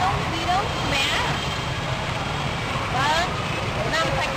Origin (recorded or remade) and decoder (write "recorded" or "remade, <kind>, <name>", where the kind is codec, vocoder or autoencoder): remade, vocoder, BigVGAN v2